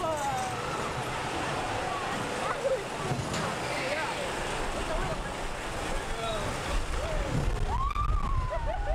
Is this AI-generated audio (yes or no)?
no